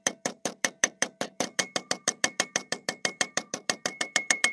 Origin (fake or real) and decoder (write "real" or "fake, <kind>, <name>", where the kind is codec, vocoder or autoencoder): fake, vocoder, BigVGAN v2